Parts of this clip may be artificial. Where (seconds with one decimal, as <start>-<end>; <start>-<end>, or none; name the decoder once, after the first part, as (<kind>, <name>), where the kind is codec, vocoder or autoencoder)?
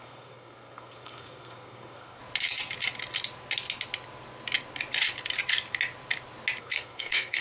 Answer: 0.0-2.2 (codec, SNAC); 6.6-7.4